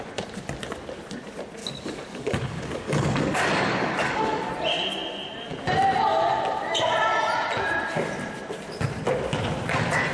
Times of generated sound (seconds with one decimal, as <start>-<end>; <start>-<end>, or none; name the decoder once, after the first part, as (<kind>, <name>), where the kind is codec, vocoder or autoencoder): 1.6-4.5 (codec, DAC)